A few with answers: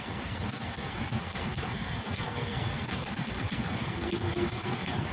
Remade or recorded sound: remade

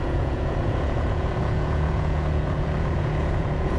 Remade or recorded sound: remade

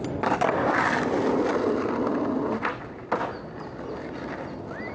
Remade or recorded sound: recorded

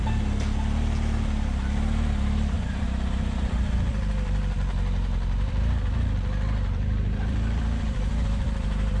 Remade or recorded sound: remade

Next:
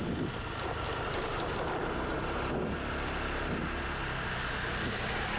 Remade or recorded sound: recorded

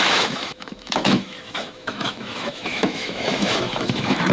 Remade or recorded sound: remade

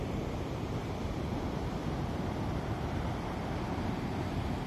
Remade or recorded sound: remade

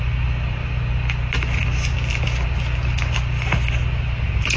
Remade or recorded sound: recorded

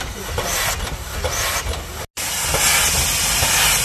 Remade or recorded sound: recorded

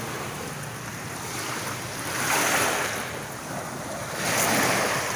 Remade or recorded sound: recorded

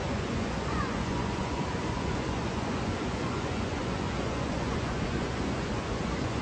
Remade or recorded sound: remade